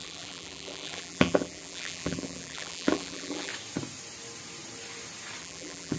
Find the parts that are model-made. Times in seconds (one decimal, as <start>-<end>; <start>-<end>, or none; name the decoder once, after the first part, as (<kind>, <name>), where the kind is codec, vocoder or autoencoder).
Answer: 0.0-3.5 (vocoder, BigVGAN v2); 5.4-6.0